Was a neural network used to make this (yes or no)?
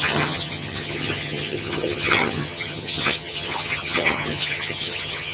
yes